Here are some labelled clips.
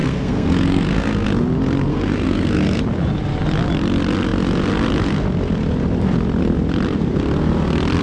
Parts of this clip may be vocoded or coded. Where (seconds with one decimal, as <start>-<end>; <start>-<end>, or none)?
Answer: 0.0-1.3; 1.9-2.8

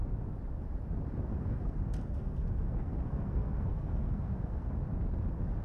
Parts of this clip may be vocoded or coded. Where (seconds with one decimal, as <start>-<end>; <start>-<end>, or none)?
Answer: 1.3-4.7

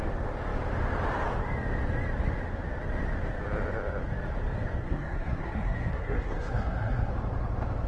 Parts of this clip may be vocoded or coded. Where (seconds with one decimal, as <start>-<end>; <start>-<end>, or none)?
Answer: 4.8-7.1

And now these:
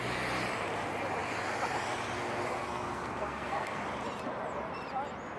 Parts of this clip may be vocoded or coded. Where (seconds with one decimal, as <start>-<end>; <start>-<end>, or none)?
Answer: 2.6-3.8